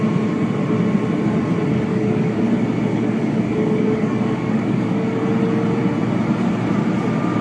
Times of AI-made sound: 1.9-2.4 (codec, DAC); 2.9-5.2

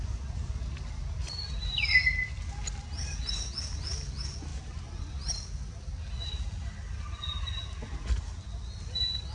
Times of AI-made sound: none

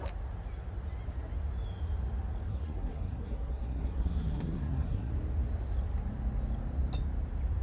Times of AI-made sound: 2.5-5.1 (codec, SNAC)

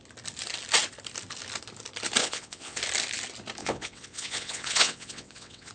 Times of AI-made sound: 2.2-2.8 (vocoder, WaveNeXt); 3.6-5.7

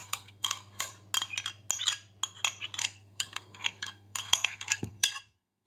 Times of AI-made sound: 0.0-0.9 (codec, SNAC); 2.8-5.7

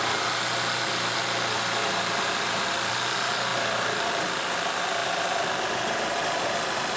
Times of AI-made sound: none